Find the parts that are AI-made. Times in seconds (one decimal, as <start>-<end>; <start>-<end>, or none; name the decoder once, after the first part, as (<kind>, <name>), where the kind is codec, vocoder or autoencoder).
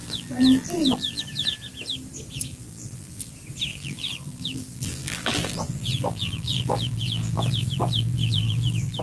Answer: 0.0-1.2 (vocoder, BigVGAN v2); 2.5-3.3; 3.7-9.0